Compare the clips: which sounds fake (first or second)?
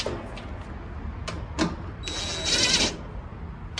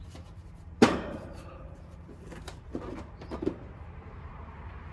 second